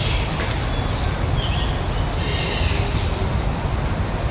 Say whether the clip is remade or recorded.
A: recorded